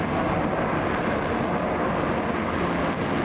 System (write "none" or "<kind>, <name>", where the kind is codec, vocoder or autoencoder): none